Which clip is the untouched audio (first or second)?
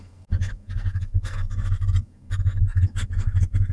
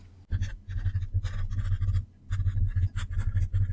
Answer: second